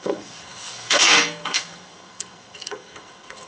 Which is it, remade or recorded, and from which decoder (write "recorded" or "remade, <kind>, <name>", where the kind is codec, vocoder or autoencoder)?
remade, codec, SNAC